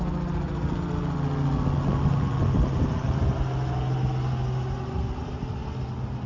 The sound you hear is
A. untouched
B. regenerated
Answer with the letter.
A